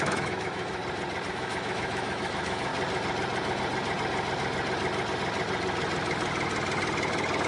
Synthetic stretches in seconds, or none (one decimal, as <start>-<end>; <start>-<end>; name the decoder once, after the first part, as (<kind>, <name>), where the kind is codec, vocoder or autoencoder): 0.0-0.8 (autoencoder, DAC-VAE); 1.3-2.7